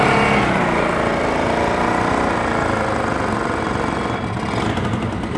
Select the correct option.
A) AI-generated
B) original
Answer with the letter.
B